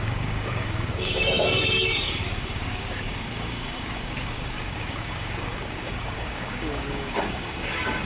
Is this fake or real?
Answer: fake